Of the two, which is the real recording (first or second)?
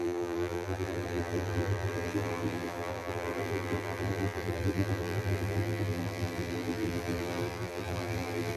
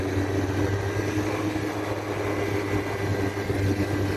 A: second